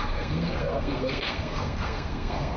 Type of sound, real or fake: fake